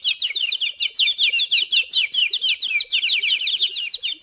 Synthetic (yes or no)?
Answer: no